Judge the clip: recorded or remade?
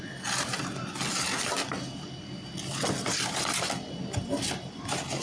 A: recorded